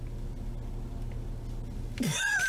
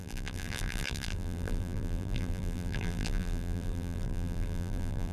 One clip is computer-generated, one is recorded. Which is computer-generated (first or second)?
second